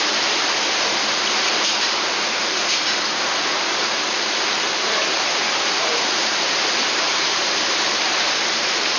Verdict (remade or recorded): remade